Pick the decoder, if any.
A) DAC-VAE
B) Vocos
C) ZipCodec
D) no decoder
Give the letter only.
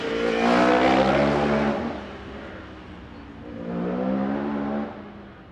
D